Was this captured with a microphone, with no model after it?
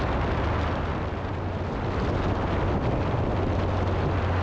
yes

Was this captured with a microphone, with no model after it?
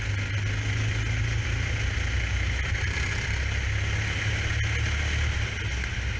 yes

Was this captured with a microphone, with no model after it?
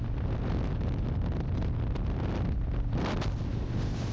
yes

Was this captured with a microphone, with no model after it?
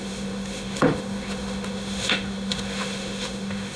no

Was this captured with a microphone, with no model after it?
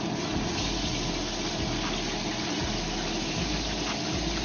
yes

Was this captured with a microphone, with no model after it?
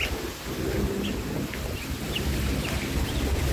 yes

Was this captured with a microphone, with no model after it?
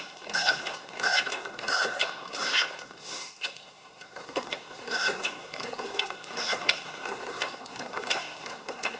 no